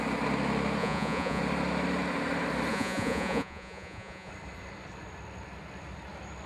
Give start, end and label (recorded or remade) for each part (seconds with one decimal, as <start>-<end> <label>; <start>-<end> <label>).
0.0-0.8 recorded; 0.8-1.4 remade; 1.4-2.7 recorded; 2.7-4.3 remade; 4.3-6.5 recorded